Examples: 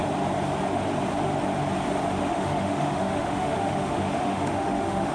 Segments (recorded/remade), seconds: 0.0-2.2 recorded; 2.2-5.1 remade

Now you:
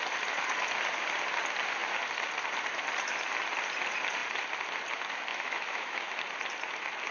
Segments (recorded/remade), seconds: 0.0-5.3 recorded; 5.3-6.2 remade; 6.2-7.1 recorded

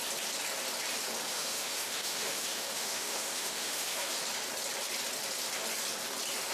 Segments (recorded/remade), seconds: 0.0-1.3 recorded; 1.3-4.2 remade; 4.2-6.5 recorded

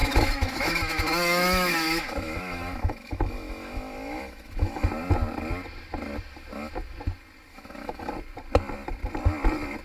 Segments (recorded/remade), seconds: 0.0-4.9 remade; 4.9-7.5 recorded; 7.5-8.1 remade; 8.1-9.8 recorded

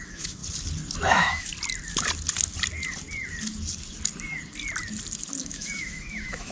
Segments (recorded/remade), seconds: 0.0-0.4 remade; 0.4-1.1 recorded; 1.1-1.5 remade; 1.5-5.4 recorded; 5.4-6.5 remade

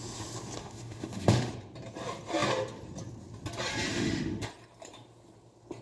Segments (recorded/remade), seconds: 0.0-0.6 recorded; 0.6-1.5 remade; 1.5-3.9 recorded; 3.9-4.5 remade; 4.5-5.8 recorded

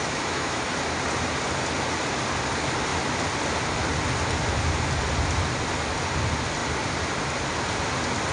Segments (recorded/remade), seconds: 0.0-0.6 remade; 0.6-8.3 recorded